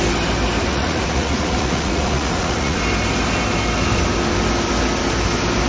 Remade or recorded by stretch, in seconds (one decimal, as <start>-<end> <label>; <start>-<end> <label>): 0.0-0.7 recorded; 0.7-2.8 remade; 2.8-5.7 recorded